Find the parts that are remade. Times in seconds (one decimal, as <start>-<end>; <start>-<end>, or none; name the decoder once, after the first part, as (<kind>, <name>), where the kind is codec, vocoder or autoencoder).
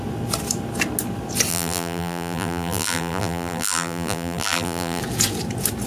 1.5-5.0 (vocoder, BigVGAN v2)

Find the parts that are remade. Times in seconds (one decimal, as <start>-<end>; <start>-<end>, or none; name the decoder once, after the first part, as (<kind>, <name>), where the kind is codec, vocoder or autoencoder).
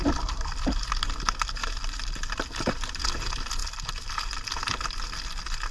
1.6-3.0 (vocoder, BigVGAN v2)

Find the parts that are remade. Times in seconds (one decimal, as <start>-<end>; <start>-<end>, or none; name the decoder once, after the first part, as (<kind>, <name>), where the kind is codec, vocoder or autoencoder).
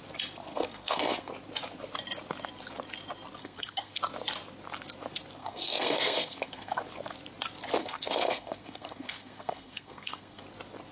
0.5-1.3 (codec, SNAC); 3.4-4.0; 5.4-6.8; 7.8-10.4